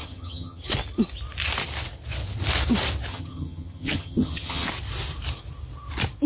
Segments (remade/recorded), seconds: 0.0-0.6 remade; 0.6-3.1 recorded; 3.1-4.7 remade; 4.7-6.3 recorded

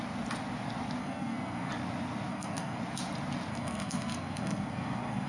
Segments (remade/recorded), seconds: 0.0-1.0 recorded; 1.0-1.7 remade; 1.7-2.3 recorded; 2.3-2.8 remade; 2.8-3.5 recorded; 3.5-5.3 remade

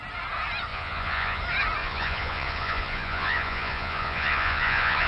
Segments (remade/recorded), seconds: 0.0-0.7 recorded; 0.7-1.4 remade; 1.4-1.8 recorded; 1.8-5.1 remade